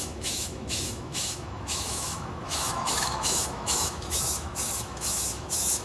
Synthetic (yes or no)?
yes